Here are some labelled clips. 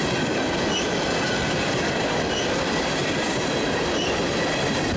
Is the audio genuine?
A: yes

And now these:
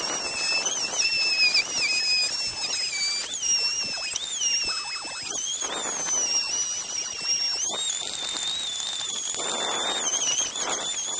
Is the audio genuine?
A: yes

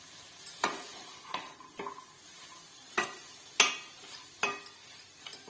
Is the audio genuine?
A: yes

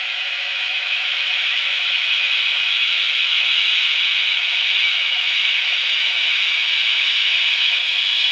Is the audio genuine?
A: no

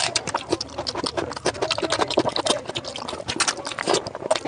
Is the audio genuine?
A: yes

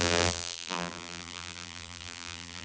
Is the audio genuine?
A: no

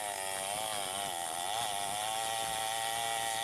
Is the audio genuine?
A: yes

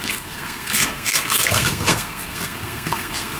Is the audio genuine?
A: no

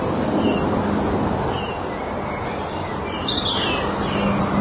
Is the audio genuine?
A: yes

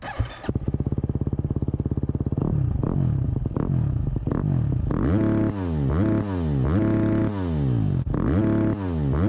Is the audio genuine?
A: yes